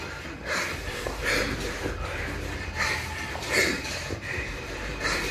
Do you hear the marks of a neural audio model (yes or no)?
yes